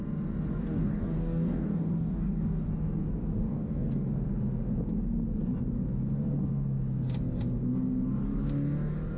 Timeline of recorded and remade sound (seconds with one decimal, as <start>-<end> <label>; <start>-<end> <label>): 0.0-0.5 recorded; 0.5-2.7 remade; 2.7-3.3 recorded; 3.3-4.1 remade; 4.1-9.2 recorded